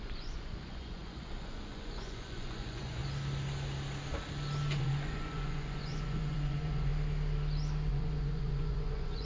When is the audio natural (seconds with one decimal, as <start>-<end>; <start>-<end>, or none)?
3.0-4.8; 6.9-7.9